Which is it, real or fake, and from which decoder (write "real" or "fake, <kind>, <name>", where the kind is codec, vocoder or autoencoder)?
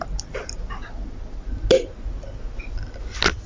real